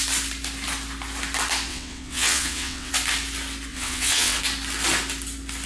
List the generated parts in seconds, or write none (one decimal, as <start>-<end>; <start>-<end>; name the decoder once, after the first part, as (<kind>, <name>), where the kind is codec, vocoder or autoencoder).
1.7-2.9 (vocoder, WaveNeXt); 3.7-4.4